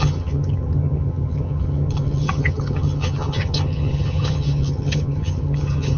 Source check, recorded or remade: remade